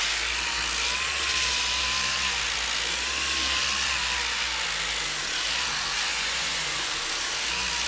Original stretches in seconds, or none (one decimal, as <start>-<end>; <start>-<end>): 0.0-6.1; 6.9-7.9